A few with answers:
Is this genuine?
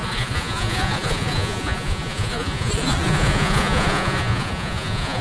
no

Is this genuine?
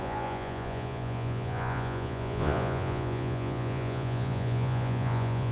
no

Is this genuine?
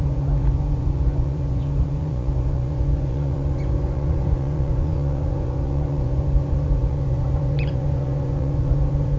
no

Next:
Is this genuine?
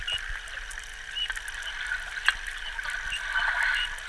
yes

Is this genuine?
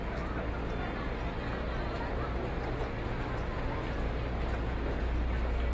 yes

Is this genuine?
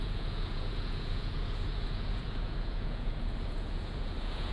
no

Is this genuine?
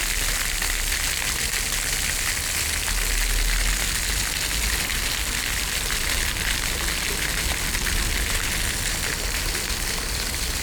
yes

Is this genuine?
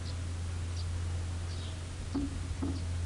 yes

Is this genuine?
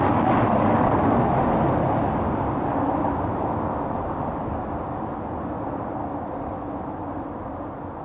yes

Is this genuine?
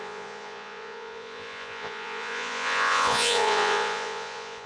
no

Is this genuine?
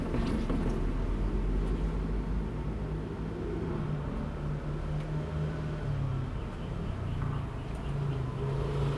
yes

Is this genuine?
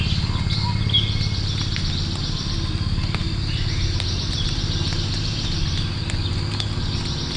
yes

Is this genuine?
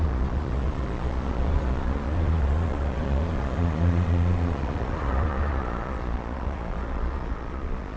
no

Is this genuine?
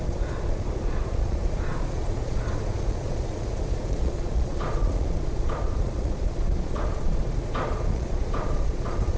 no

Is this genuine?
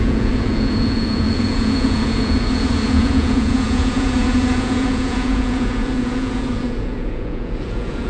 no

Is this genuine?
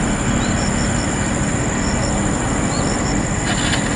yes